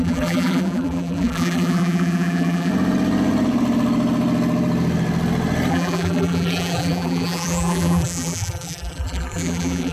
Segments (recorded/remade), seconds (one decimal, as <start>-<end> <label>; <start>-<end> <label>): 0.0-2.7 remade; 2.7-5.7 recorded; 5.7-9.9 remade